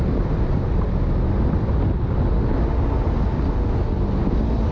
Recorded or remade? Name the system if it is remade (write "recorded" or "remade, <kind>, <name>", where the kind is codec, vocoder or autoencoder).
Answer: recorded